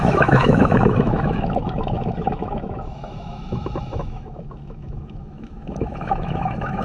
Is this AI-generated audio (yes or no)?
yes